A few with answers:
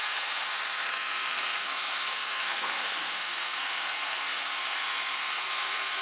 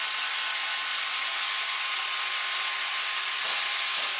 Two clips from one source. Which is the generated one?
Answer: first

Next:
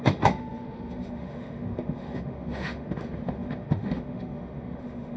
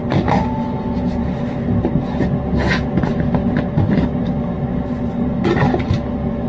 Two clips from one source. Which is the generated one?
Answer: first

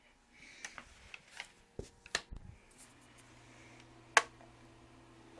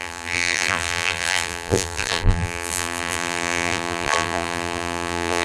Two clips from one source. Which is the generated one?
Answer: second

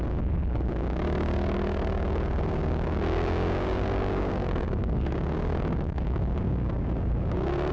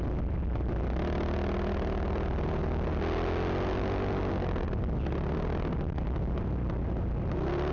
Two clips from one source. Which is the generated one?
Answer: first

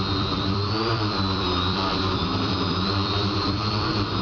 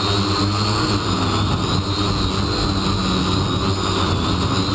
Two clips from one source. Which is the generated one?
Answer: first